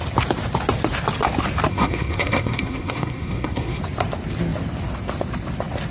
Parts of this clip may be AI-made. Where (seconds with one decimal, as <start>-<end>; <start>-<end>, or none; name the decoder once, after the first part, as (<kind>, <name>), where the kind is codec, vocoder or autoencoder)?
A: 1.7-3.8 (codec, SNAC)